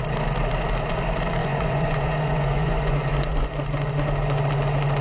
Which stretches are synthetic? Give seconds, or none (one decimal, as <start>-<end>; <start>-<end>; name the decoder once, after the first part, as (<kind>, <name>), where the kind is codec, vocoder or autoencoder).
1.4-3.5 (vocoder, Vocos)